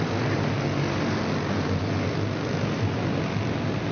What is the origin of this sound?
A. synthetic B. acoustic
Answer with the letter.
B